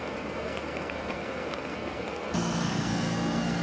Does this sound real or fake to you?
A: fake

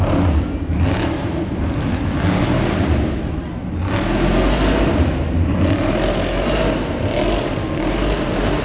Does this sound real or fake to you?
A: real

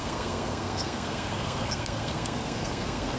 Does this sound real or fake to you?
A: fake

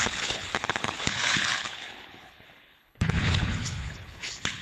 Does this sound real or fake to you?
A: fake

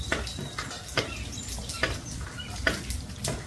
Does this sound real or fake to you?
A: real